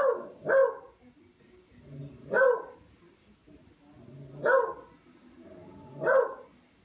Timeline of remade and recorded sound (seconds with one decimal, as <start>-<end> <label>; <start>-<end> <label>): 0.0-6.8 recorded